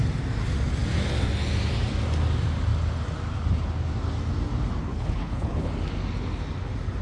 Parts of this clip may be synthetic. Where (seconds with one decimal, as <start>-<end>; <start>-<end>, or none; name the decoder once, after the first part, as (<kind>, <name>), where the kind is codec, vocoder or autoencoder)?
4.8-5.7 (codec, HILCodec)

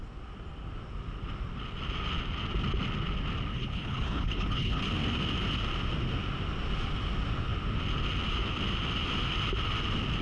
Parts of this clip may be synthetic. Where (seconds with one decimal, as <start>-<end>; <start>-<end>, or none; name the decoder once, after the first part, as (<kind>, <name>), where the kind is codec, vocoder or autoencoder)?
3.5-4.8 (codec, HILCodec)